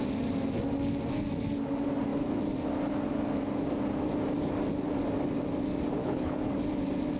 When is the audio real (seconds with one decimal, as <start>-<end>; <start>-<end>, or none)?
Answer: 0.0-6.0; 6.5-7.2